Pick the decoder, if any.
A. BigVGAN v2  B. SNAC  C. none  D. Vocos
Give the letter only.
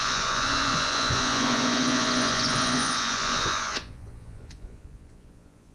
D